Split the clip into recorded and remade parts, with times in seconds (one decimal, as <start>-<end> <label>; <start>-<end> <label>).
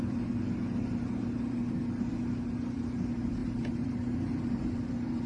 0.0-3.4 recorded; 3.4-4.7 remade; 4.7-5.3 recorded